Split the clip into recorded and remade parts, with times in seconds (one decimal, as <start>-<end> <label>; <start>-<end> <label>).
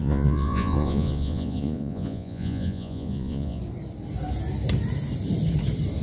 0.0-3.6 remade; 3.6-6.0 recorded